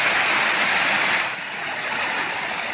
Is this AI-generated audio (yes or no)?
no